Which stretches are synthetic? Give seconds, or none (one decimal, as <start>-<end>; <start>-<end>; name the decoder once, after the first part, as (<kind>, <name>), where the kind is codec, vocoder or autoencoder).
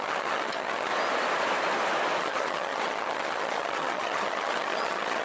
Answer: 0.0-0.9 (vocoder, HiFi-GAN); 2.2-5.2